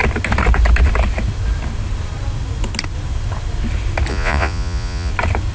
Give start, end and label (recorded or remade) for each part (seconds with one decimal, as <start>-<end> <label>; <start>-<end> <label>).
0.0-4.1 recorded; 4.1-5.1 remade; 5.1-5.5 recorded